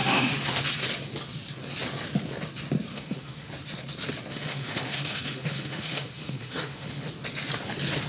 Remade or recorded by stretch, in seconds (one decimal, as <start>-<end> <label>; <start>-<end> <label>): 0.0-0.6 remade; 0.6-2.9 recorded; 2.9-3.5 remade; 3.5-4.3 recorded; 4.3-7.1 remade; 7.1-8.1 recorded